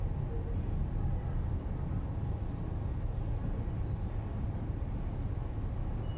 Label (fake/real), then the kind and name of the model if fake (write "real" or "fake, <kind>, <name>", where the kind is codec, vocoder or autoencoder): real